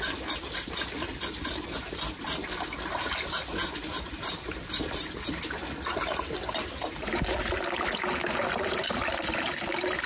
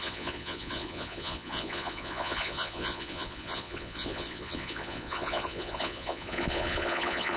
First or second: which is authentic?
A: first